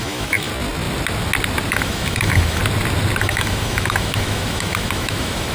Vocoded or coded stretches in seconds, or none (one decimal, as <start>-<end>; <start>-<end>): 0.0-0.5; 1.7-2.6; 3.2-5.5